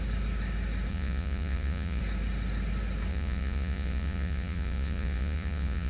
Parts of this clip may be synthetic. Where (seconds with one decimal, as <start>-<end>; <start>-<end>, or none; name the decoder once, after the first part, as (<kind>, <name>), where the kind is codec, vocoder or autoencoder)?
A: 0.9-2.0 (vocoder, Vocos); 3.1-5.9